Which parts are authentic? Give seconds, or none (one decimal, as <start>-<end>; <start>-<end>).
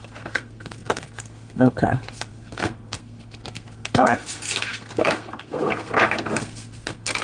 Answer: none